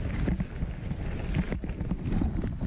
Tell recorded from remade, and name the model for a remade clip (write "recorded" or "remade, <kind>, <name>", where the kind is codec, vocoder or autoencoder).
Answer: recorded